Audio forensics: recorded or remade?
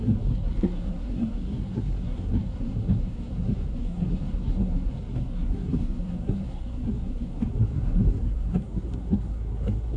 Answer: remade